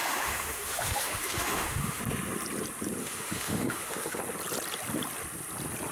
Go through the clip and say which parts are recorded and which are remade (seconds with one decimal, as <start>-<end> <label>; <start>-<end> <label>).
0.0-2.0 remade; 2.0-3.0 recorded; 3.0-4.2 remade; 4.2-5.9 recorded